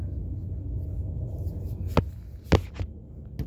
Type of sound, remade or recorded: recorded